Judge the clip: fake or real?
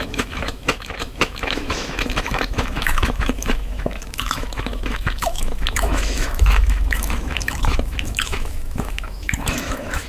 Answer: fake